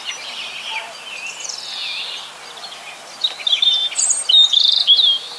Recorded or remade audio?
recorded